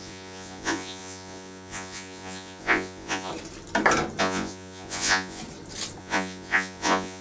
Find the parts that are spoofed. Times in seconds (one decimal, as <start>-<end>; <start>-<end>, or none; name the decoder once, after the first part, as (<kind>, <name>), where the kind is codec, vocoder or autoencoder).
0.0-3.3 (vocoder, Vocos); 4.2-5.4; 6.0-7.2